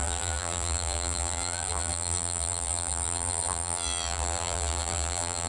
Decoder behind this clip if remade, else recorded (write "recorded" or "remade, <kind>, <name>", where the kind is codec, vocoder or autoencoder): remade, vocoder, BigVGAN v2